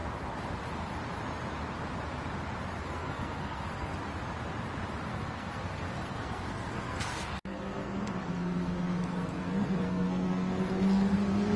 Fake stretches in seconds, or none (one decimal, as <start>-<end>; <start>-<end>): 2.8-3.9; 5.1-11.6